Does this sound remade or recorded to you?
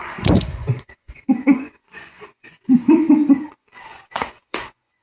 remade